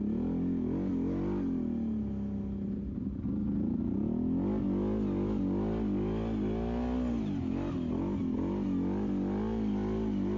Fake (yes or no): no